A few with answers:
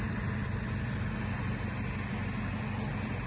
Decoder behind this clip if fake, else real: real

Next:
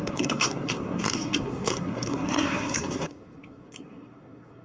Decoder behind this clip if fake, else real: fake, codec, SNAC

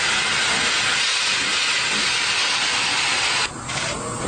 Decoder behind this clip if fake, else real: real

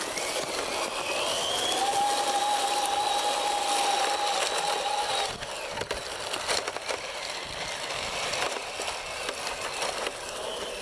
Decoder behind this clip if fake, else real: real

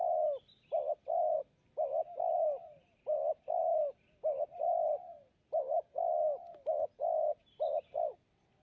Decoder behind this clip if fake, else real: real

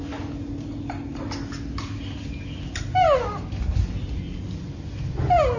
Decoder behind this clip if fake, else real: real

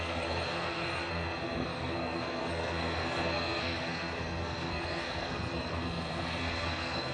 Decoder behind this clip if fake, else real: fake, codec, SNAC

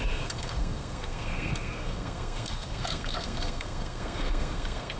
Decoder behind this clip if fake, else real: fake, codec, SNAC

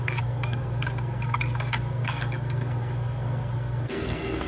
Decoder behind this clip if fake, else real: fake, codec, SNAC